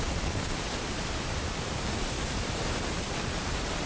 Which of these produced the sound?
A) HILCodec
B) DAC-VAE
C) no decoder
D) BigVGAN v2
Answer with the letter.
D